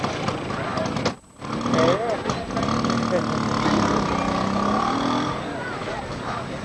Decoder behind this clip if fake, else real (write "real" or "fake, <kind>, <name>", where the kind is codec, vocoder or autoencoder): real